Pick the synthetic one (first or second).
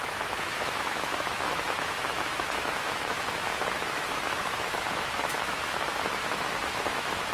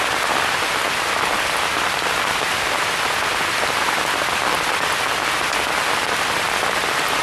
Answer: first